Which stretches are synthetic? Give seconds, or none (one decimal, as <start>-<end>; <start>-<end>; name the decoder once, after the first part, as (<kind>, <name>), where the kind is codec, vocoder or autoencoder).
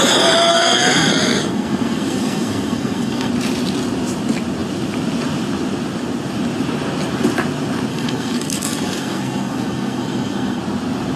0.5-3.3 (codec, SNAC); 7.9-10.6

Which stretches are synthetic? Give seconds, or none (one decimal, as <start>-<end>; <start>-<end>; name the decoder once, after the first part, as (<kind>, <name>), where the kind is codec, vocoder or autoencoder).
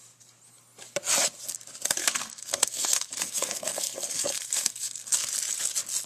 2.0-5.3 (codec, SNAC)